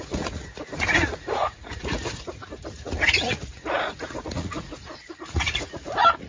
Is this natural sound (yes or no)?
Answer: no